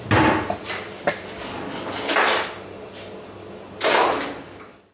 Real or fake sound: real